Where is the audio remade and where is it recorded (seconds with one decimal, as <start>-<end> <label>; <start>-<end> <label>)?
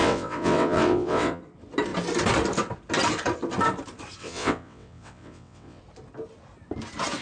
0.0-1.4 remade; 1.4-4.2 recorded; 4.2-5.8 remade; 5.8-7.2 recorded